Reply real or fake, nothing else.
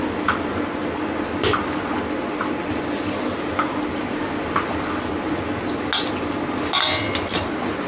real